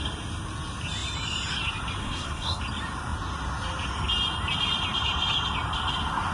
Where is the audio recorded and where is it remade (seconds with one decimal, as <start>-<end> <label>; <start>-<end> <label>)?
0.0-2.0 recorded; 2.0-2.6 remade; 2.6-6.3 recorded